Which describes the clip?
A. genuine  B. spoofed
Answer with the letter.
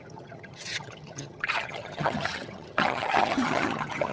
B